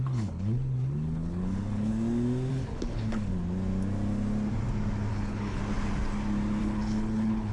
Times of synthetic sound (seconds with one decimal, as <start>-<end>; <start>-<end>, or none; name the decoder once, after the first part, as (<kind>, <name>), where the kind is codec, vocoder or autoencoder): 0.0-1.9 (codec, HILCodec); 2.5-3.3; 5.1-5.6; 6.6-7.5